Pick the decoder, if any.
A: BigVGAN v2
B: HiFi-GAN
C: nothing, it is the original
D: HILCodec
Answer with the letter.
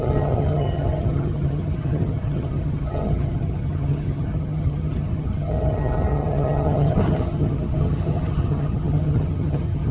B